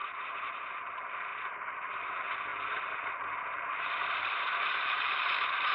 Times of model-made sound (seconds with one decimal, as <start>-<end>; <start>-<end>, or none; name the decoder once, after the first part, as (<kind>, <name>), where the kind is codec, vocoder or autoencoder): 0.0-5.7 (vocoder, BigVGAN v2)